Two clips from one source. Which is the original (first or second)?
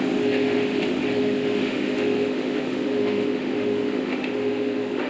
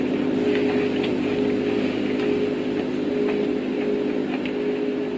second